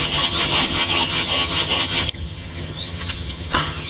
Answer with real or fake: fake